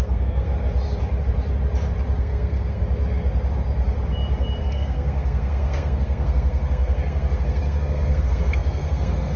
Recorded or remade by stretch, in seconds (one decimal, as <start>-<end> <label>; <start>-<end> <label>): 0.0-0.5 remade; 0.5-2.2 recorded; 2.2-2.8 remade; 2.8-4.6 recorded; 4.6-9.4 remade